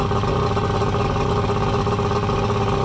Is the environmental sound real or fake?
real